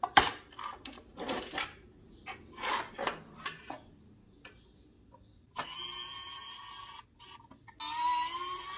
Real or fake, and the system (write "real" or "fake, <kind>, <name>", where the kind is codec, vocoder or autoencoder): real